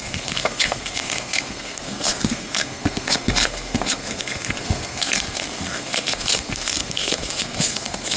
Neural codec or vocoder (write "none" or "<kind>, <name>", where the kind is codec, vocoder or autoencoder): codec, SNAC